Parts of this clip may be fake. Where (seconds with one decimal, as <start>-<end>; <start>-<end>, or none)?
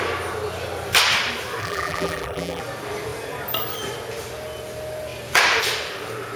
1.6-2.6